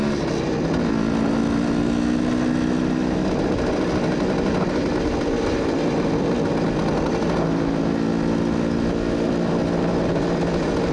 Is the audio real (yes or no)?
yes